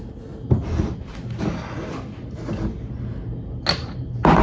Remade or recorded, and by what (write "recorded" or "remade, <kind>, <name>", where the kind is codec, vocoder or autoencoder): recorded